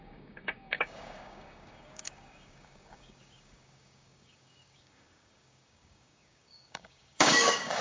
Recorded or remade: remade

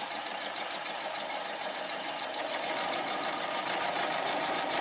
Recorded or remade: remade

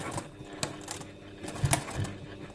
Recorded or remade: recorded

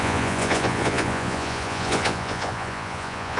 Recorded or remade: remade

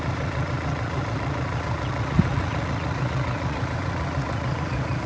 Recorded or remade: remade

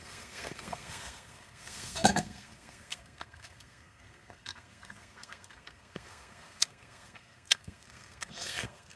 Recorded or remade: remade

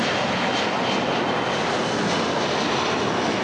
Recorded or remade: recorded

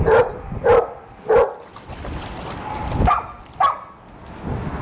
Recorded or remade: recorded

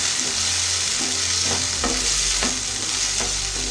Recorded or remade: recorded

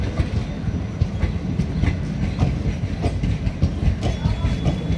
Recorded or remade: recorded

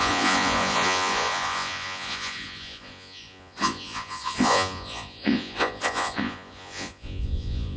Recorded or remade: remade